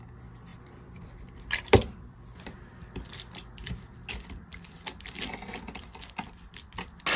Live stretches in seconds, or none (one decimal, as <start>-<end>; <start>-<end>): 0.0-0.5; 4.1-7.2